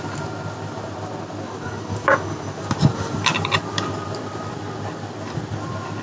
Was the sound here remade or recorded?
recorded